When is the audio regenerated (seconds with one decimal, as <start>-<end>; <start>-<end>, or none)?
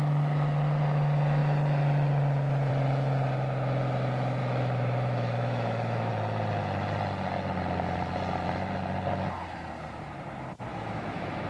4.4-6.1; 10.7-11.5